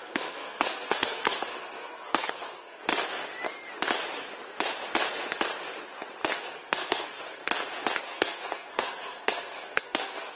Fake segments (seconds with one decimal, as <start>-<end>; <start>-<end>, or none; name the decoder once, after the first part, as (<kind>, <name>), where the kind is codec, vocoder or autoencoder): 0.0-2.8 (codec, SNAC); 6.4-7.4; 8.0-10.4